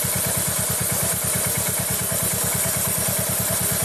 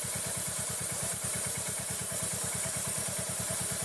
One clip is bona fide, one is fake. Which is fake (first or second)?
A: second